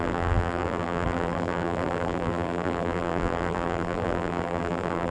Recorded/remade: remade